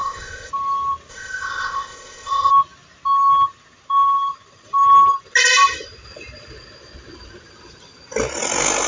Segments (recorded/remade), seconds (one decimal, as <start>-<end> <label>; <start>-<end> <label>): 0.0-0.5 remade; 0.5-1.1 recorded; 1.1-2.5 remade; 2.5-8.9 recorded